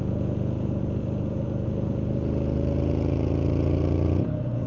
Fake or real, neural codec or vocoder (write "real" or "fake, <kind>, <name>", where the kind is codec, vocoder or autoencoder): fake, vocoder, Vocos